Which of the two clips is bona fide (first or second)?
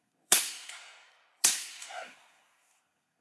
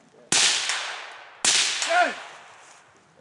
second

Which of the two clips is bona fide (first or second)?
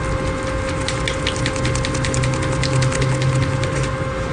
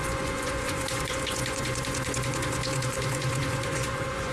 first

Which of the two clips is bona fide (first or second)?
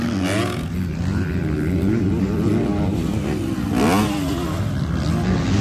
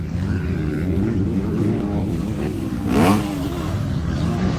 first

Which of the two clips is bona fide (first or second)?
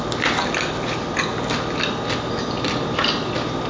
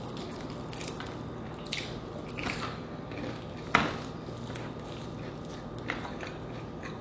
second